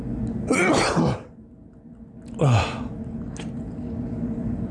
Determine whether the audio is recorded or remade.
recorded